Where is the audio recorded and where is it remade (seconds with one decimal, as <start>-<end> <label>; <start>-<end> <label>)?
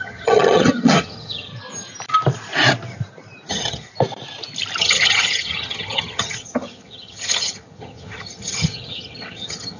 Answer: 0.0-1.5 remade; 1.5-3.5 recorded; 3.5-3.9 remade; 3.9-4.8 recorded; 4.8-9.8 remade